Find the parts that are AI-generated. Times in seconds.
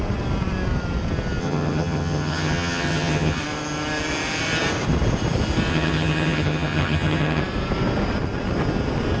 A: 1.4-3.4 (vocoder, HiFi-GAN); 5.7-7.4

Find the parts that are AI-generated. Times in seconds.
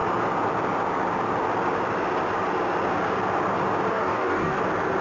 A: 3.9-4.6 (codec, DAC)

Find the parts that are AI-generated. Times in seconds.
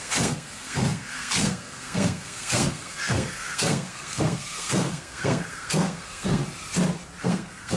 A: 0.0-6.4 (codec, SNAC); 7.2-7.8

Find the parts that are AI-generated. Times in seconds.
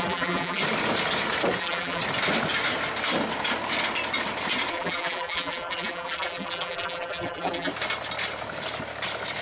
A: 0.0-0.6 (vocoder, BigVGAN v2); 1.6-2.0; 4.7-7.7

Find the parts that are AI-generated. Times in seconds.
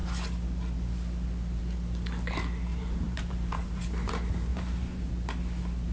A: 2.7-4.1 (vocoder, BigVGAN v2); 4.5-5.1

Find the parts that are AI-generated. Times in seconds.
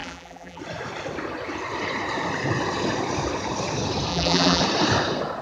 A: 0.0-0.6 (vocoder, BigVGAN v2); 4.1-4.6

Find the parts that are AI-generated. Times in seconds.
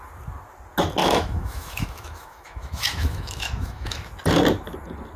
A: 1.0-4.1 (autoencoder, DAC-VAE)